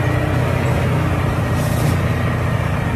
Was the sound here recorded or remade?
recorded